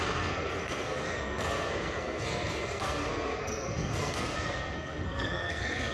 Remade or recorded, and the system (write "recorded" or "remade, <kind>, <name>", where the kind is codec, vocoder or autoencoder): remade, codec, SNAC